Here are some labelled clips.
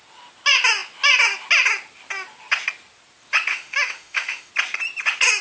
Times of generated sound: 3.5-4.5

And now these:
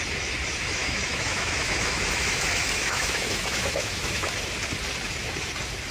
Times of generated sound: 0.8-4.3

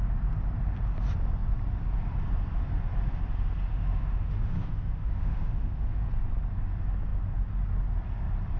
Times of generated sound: 3.7-6.1